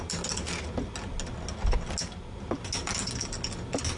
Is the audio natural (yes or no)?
yes